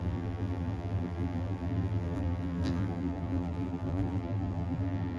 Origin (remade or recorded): remade